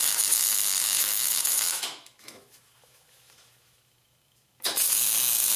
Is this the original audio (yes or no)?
no